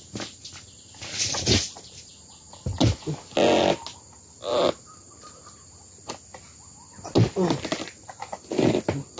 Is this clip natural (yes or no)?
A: yes